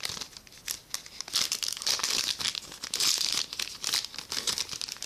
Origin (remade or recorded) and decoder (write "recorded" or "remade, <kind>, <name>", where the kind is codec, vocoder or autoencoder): recorded